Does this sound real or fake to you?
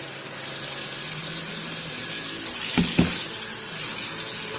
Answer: real